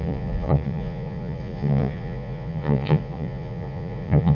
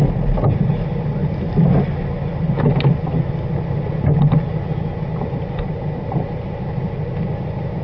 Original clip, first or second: second